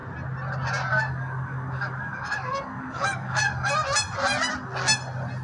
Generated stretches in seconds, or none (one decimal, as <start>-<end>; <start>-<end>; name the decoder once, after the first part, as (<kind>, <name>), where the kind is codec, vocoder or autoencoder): 0.9-3.7 (codec, DAC)